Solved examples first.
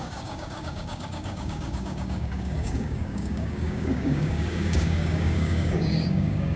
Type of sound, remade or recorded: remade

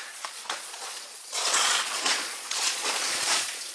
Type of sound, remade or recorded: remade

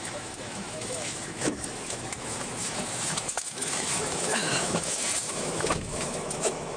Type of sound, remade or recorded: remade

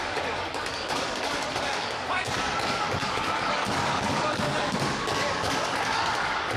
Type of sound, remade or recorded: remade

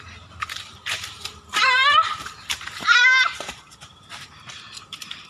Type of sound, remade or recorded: remade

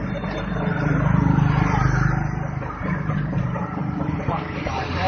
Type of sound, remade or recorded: remade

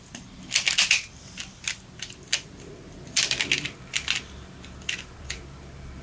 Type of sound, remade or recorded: remade